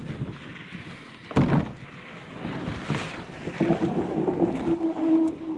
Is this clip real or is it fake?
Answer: real